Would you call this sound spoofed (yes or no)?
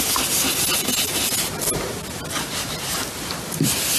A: no